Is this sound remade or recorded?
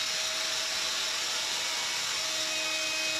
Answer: recorded